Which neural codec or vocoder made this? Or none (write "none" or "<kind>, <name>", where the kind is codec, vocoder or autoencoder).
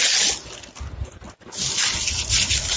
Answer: none